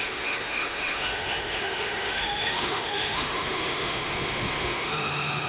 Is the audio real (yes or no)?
no